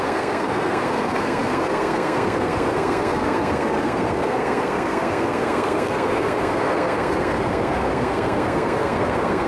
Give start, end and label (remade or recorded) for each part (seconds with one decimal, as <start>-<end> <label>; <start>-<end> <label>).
0.0-9.5 remade